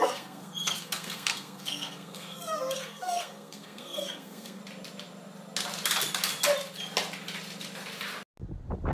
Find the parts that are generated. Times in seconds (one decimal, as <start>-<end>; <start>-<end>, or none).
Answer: 0.0-4.6